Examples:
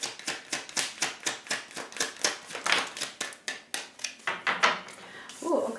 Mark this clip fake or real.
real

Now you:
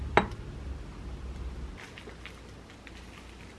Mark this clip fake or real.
real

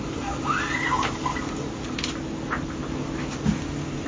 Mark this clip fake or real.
real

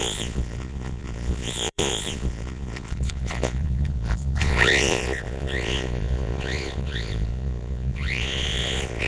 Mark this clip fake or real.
fake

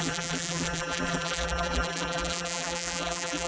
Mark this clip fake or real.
fake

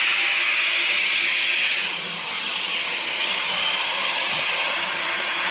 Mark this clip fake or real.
fake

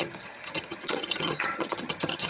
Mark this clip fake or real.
fake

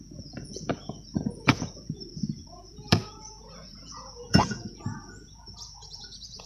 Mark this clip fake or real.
fake